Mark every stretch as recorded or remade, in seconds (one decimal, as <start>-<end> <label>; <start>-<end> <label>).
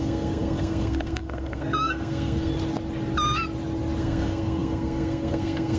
0.0-2.5 remade; 2.5-4.0 recorded; 4.0-5.8 remade